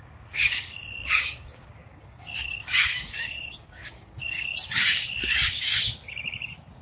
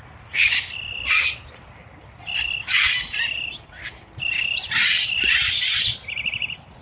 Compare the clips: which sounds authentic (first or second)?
second